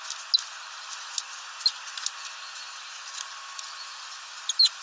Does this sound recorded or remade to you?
recorded